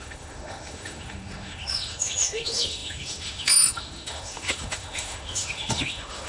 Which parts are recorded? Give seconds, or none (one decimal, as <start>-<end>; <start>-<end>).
none